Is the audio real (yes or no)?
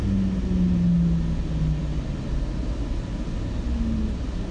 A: yes